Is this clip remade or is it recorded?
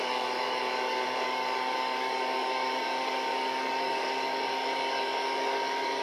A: remade